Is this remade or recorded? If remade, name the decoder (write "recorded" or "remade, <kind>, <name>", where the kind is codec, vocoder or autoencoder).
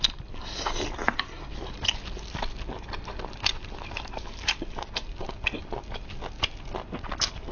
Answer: recorded